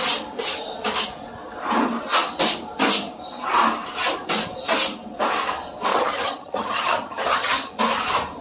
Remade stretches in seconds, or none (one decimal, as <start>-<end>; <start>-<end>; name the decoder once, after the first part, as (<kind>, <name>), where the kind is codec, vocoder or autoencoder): 5.9-7.8 (vocoder, HiFi-GAN)